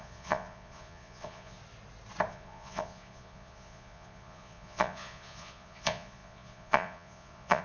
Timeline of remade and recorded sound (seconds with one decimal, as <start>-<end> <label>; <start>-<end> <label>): 0.0-1.6 remade; 1.6-2.3 recorded; 2.3-7.6 remade